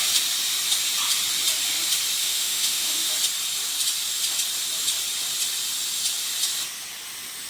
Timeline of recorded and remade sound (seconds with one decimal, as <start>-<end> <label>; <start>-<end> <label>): 0.0-2.2 recorded; 2.2-3.1 remade; 3.1-7.5 recorded